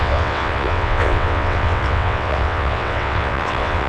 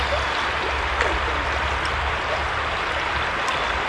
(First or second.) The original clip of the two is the second